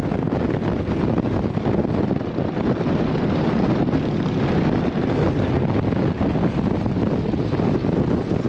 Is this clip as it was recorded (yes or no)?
yes